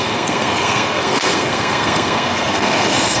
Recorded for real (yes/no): no